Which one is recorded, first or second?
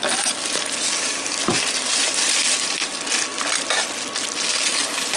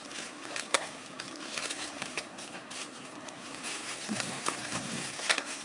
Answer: first